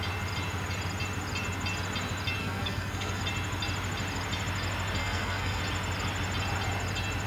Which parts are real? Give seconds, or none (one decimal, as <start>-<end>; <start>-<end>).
0.0-2.4; 3.2-5.0; 5.6-7.3